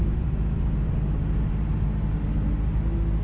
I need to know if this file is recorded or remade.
recorded